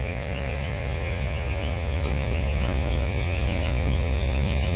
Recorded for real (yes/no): no